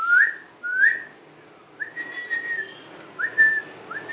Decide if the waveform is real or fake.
real